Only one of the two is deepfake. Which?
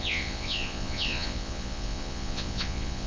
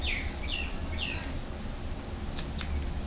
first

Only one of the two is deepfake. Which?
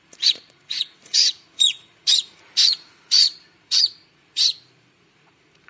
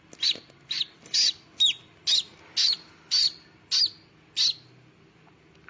first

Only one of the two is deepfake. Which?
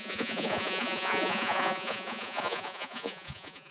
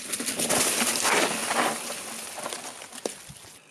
first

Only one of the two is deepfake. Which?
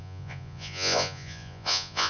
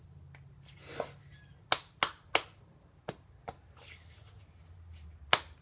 first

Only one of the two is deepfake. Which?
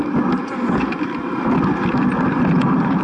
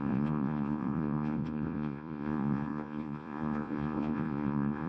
second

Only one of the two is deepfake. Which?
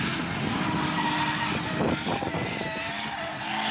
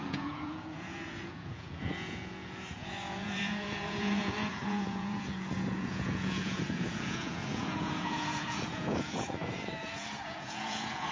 second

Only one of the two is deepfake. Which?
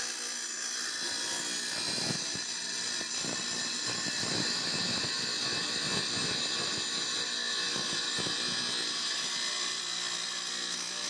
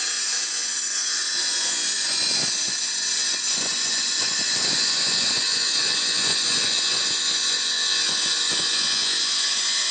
second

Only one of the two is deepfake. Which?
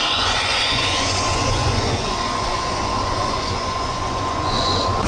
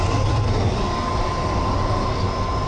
first